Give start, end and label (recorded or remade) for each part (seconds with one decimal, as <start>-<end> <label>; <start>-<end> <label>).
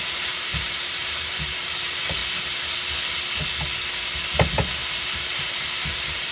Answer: 0.0-2.2 remade; 2.2-4.9 recorded; 4.9-6.3 remade